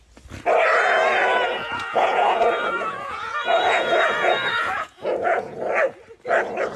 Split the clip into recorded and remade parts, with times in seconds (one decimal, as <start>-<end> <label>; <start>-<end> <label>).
0.0-1.5 recorded; 1.5-5.6 remade; 5.6-6.8 recorded